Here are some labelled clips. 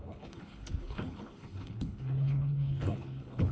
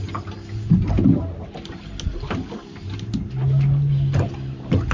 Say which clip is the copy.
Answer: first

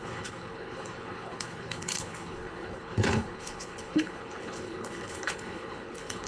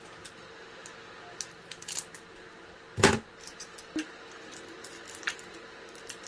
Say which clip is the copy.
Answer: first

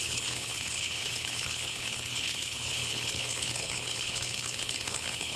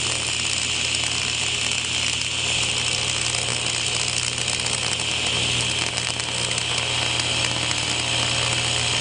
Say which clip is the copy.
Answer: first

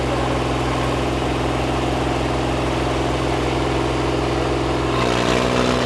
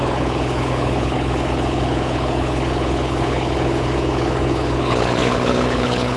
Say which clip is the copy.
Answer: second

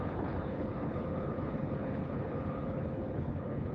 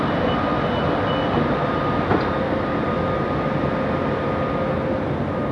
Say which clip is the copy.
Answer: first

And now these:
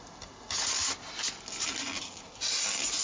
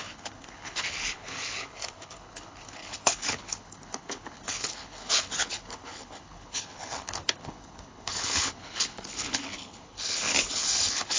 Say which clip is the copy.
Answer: second